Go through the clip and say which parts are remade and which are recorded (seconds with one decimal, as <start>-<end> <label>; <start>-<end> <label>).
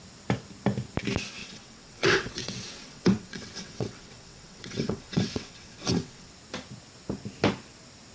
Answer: 0.0-1.4 recorded; 1.4-6.3 remade; 6.3-8.1 recorded